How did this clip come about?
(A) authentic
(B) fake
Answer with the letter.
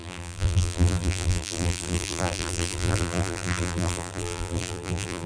B